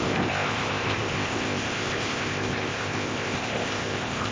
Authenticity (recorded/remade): remade